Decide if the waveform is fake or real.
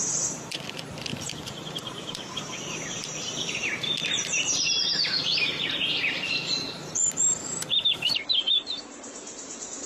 fake